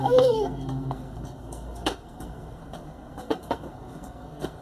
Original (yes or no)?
no